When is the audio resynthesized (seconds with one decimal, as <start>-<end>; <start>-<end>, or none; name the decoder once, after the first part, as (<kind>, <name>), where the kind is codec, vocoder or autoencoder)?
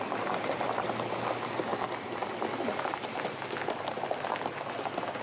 none